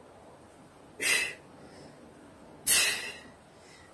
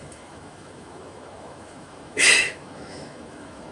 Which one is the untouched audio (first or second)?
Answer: first